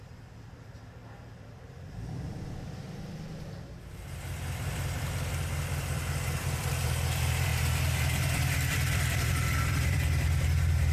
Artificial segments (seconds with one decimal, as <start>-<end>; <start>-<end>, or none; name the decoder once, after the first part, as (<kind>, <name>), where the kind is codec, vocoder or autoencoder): 0.0-10.9 (vocoder, BigVGAN v2)